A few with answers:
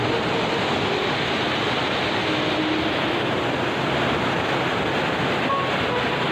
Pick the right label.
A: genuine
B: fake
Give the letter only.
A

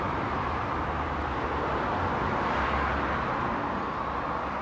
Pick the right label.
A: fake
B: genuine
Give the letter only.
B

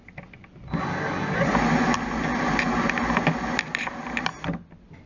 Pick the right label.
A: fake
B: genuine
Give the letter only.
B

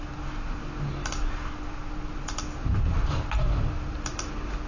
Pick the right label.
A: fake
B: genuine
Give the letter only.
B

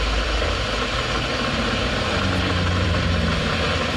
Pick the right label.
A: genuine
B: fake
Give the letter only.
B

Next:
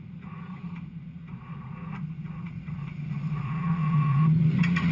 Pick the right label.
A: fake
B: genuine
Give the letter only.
A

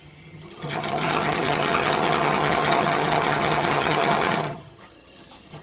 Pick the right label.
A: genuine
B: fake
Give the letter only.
B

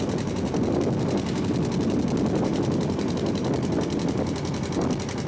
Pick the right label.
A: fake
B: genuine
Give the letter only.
B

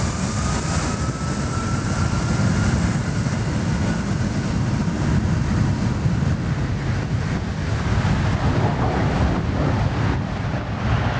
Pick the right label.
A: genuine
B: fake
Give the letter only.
A